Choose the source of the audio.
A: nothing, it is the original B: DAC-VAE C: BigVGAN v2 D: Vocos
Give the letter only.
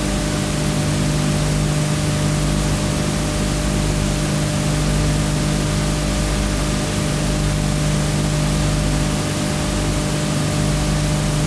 A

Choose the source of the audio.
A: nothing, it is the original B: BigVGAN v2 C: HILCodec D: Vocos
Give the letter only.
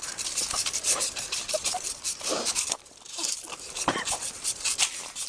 B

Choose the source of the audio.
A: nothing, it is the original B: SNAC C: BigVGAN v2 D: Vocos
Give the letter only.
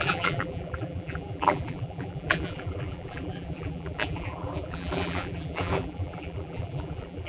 C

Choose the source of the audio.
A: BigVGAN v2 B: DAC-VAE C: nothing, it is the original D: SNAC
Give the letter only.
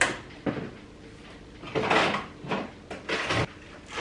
C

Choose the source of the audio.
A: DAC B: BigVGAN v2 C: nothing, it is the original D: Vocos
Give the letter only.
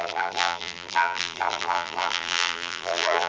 B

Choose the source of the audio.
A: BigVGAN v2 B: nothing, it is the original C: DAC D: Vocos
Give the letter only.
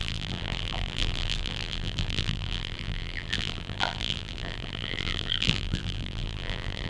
A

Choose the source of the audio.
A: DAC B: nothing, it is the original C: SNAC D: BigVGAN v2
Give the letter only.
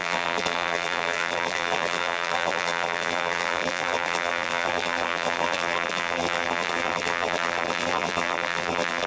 D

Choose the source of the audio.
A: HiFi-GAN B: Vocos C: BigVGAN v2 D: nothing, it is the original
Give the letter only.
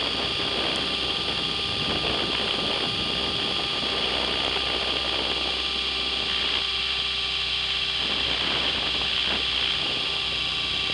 D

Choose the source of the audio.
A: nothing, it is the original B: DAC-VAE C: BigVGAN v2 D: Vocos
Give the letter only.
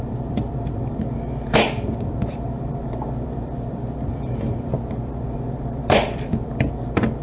C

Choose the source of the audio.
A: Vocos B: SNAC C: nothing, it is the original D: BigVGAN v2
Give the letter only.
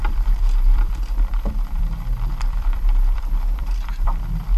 D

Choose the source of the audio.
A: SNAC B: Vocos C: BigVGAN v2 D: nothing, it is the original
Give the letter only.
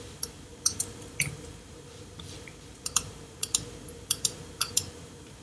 C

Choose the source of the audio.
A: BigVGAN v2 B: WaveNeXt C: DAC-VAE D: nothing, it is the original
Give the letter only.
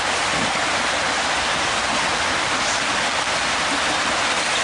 D